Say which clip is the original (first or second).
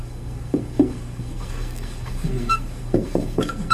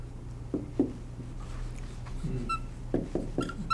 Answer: second